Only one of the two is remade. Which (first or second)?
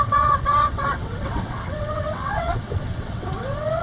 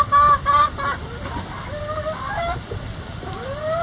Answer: first